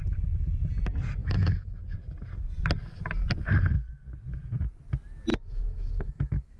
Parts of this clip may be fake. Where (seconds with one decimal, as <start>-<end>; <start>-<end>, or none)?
1.2-1.8; 5.3-6.6